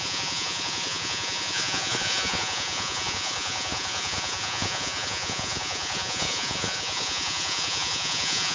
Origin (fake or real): fake